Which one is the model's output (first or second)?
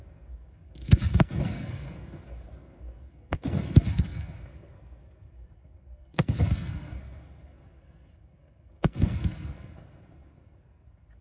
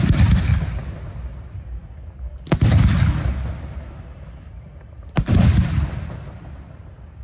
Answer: first